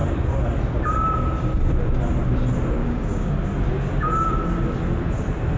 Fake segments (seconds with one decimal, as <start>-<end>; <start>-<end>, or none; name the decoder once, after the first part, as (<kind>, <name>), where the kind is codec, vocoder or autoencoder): 2.8-3.3 (codec, DAC)